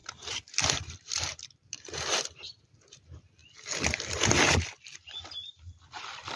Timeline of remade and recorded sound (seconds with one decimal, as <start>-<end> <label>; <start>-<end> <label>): 0.0-0.7 recorded; 0.7-3.4 remade; 3.4-5.2 recorded; 5.2-6.4 remade